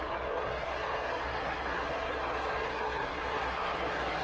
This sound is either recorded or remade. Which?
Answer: remade